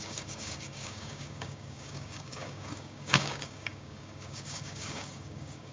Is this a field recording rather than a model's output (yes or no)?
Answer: no